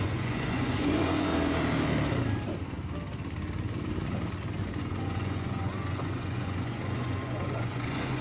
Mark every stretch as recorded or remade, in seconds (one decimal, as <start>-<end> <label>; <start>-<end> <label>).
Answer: 0.0-1.3 remade; 1.3-4.8 recorded; 4.8-8.2 remade